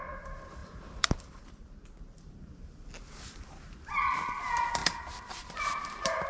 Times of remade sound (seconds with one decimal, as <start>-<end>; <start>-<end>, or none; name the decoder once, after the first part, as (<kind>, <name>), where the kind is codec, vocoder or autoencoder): 0.6-1.5 (vocoder, BigVGAN v2); 4.8-6.3